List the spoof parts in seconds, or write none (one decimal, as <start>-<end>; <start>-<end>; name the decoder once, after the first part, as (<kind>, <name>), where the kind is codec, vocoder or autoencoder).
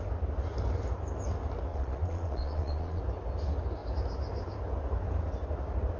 1.7-3.0 (vocoder, Vocos)